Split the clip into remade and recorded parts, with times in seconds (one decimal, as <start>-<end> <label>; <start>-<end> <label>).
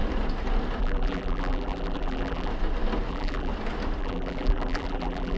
0.0-0.8 recorded; 0.8-2.5 remade; 2.5-3.1 recorded; 3.1-3.5 remade; 3.5-4.0 recorded; 4.0-5.4 remade